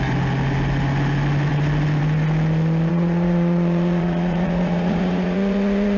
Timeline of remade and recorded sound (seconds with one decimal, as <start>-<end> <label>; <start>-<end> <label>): 0.0-2.9 recorded; 2.9-6.0 remade